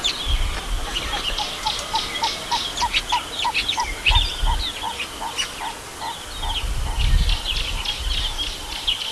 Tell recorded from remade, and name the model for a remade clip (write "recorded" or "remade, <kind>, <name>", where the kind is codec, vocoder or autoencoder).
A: recorded